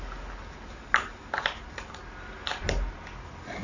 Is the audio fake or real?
real